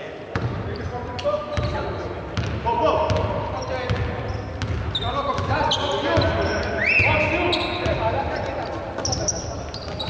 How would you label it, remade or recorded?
recorded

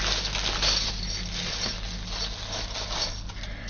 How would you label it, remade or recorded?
recorded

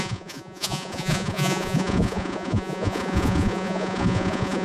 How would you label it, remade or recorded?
remade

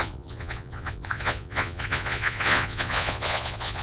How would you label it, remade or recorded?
remade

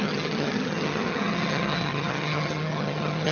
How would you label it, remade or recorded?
remade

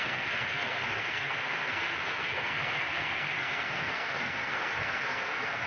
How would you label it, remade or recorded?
remade